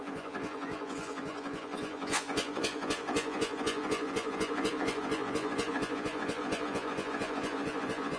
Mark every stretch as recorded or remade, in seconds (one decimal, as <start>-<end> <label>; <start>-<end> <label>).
0.0-8.2 remade